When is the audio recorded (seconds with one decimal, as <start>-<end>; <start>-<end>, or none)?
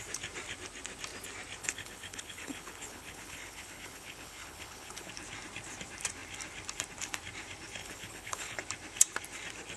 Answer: 0.0-1.6; 5.1-7.8; 8.6-9.8